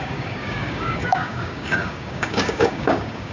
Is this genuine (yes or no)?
no